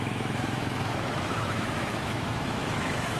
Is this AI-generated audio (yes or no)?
yes